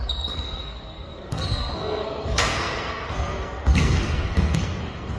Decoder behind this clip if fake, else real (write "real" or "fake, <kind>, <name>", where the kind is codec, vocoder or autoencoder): fake, codec, SNAC